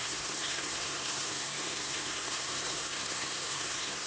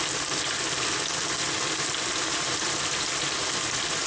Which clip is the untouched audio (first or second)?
second